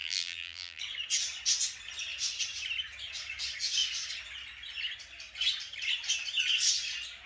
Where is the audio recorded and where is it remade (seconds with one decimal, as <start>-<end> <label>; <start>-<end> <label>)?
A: 0.0-0.8 remade; 0.8-7.3 recorded